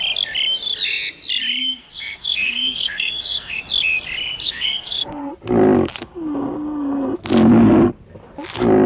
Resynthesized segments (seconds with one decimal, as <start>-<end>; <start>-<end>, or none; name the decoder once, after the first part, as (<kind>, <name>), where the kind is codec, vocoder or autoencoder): 1.6-3.6 (codec, SNAC); 4.4-5.3